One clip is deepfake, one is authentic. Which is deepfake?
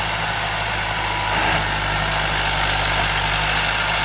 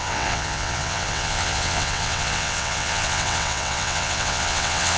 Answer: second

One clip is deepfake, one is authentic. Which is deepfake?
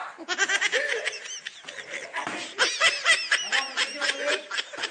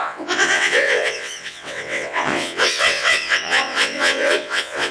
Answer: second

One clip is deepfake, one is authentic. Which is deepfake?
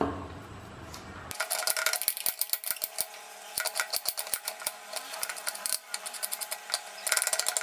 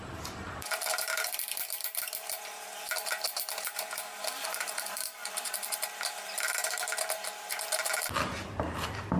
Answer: second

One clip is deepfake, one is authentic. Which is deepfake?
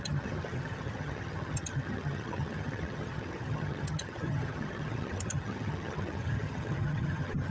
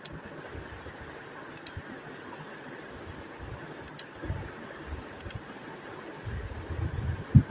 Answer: first